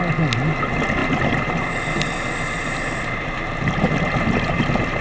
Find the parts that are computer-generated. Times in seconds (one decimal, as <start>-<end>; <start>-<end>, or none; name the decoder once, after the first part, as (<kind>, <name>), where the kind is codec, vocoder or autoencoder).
1.0-4.0 (vocoder, BigVGAN v2)